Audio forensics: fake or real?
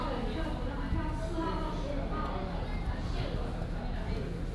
real